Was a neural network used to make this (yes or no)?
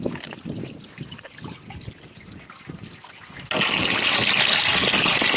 no